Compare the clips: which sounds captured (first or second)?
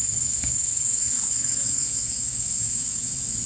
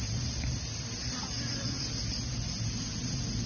second